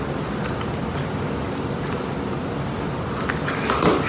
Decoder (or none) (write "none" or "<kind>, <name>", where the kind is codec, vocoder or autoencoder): none